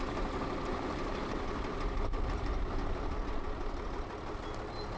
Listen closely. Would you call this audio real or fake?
fake